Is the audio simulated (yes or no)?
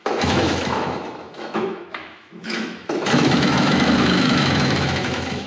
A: yes